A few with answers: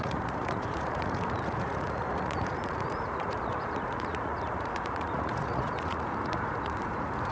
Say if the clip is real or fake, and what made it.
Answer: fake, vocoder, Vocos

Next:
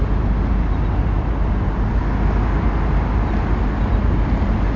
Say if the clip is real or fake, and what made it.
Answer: real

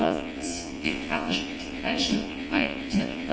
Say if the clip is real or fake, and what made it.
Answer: fake, vocoder, Vocos